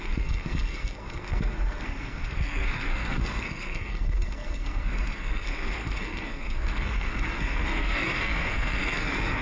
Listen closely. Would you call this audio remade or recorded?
remade